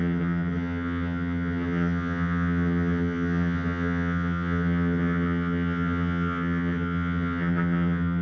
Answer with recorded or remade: remade